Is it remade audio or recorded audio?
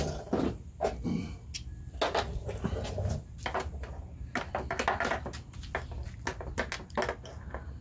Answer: recorded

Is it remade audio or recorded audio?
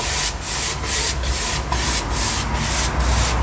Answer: recorded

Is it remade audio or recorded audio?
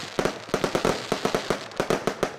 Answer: recorded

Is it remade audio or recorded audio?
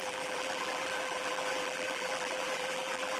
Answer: remade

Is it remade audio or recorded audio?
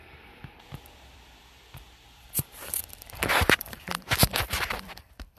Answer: remade